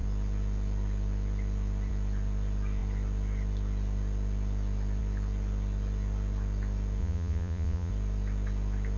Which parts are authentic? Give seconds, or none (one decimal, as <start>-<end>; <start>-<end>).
0.0-7.0; 7.9-9.0